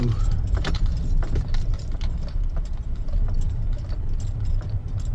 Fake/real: fake